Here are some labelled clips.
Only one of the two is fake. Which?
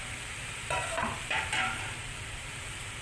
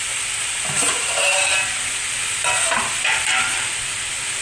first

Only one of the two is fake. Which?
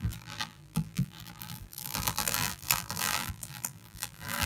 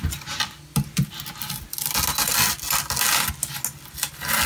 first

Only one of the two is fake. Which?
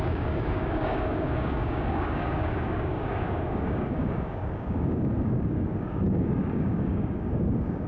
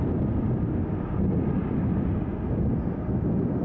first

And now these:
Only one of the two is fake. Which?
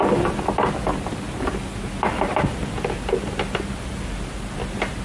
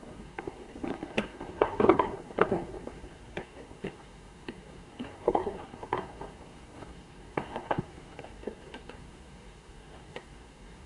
second